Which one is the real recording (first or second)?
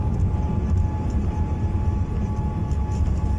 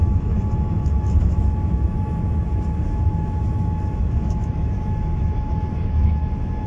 first